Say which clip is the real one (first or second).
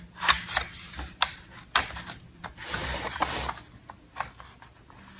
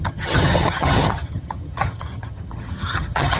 first